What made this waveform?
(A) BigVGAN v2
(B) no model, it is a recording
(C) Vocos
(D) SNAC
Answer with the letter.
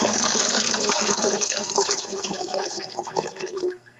D